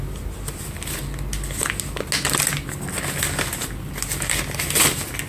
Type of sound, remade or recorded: recorded